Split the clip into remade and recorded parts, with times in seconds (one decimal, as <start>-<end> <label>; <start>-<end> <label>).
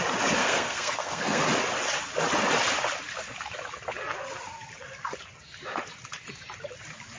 0.0-0.4 recorded; 0.4-1.4 remade; 1.4-7.2 recorded